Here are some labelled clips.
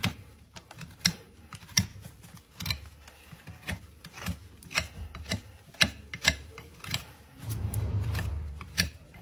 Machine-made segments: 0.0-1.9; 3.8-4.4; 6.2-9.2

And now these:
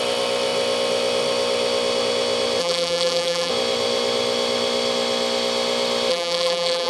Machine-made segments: 2.6-3.5; 6.1-6.9